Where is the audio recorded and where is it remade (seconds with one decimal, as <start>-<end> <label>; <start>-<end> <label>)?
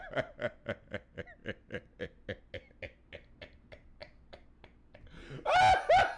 0.0-6.2 recorded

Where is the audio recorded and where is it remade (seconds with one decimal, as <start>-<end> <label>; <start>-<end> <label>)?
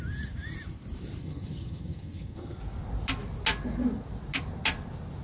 0.0-1.2 recorded; 1.2-2.6 remade; 2.6-5.2 recorded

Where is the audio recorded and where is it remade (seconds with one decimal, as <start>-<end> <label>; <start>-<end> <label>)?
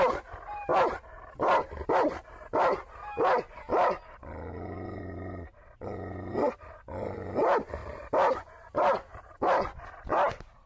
0.0-10.7 recorded